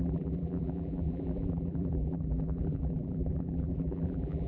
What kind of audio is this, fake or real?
fake